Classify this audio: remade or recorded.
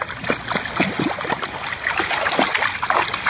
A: recorded